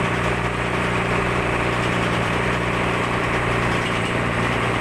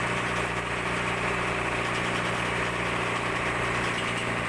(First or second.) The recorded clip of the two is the second